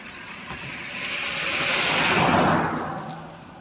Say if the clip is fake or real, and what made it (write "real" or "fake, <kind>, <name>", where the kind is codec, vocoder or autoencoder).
real